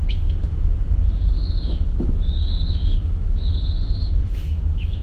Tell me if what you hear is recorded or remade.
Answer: remade